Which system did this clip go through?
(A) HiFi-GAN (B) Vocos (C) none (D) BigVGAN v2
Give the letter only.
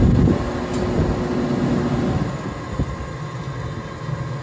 C